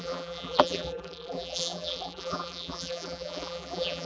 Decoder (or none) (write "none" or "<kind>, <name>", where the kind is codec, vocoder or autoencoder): vocoder, BigVGAN v2